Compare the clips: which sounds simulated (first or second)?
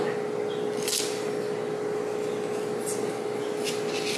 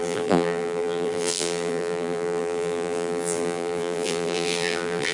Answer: second